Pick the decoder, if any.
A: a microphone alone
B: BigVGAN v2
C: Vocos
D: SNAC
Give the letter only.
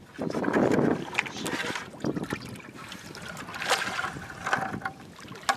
A